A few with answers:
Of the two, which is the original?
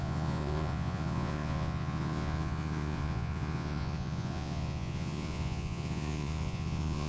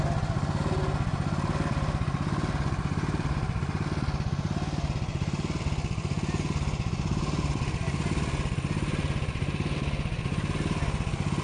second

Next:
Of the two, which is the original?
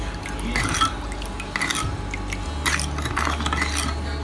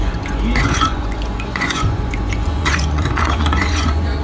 first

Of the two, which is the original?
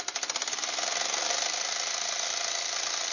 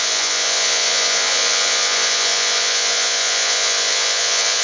first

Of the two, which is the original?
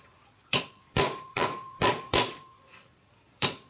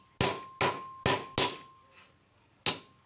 second